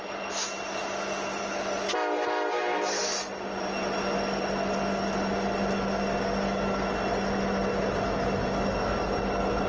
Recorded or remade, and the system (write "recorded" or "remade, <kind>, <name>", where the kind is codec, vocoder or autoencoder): recorded